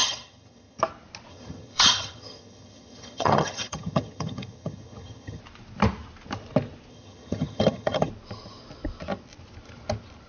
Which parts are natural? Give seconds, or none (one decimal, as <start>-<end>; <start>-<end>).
0.8-1.3; 5.4-6.9; 8.1-10.3